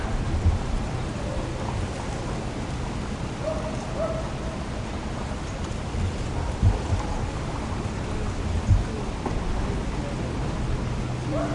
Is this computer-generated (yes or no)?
no